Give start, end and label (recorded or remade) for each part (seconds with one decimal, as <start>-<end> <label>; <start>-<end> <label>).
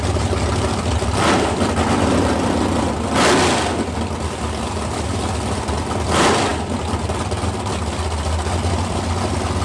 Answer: 0.0-9.6 recorded